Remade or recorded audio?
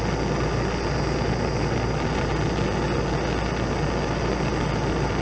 recorded